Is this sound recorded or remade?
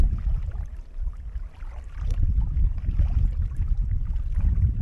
recorded